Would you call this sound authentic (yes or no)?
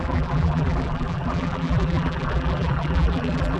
no